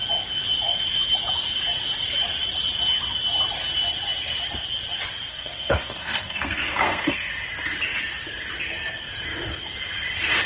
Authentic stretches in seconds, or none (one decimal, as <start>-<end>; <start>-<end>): 0.0-5.3; 7.3-10.5